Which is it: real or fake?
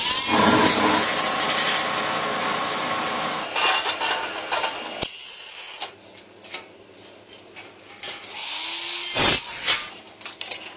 real